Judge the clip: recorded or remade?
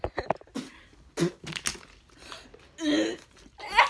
recorded